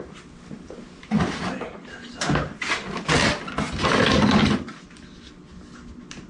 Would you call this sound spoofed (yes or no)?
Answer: no